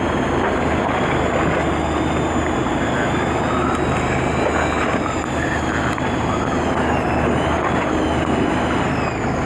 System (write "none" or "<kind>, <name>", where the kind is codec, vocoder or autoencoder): none